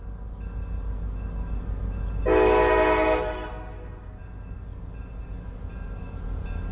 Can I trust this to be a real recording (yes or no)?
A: yes